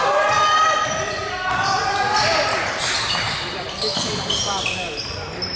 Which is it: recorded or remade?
recorded